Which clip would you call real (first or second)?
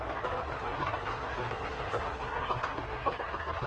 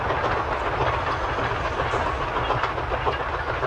second